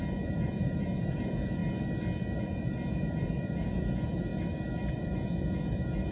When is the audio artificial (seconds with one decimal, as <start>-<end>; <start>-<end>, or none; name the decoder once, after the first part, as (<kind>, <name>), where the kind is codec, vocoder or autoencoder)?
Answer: 0.0-1.6 (vocoder, Vocos); 2.4-4.3; 4.9-6.1